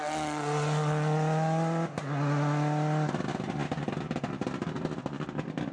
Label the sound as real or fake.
real